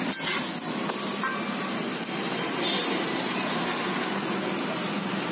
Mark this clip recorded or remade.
recorded